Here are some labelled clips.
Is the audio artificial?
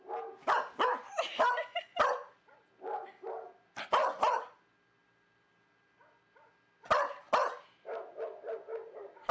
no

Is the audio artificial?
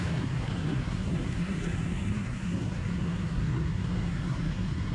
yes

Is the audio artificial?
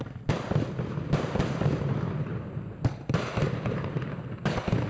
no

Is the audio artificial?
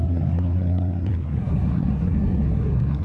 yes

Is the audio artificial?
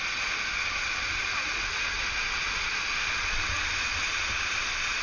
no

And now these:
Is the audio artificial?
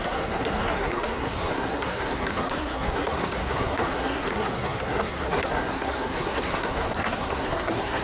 yes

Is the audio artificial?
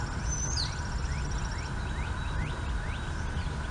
no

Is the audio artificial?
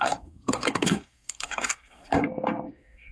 yes